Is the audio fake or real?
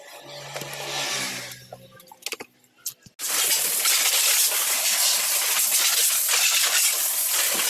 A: real